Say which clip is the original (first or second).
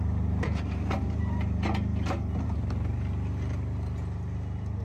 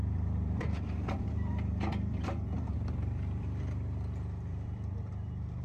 first